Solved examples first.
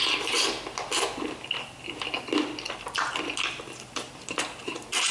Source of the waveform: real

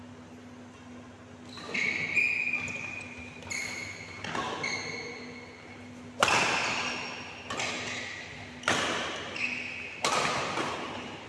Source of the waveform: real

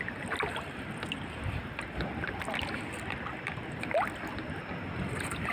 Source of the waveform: real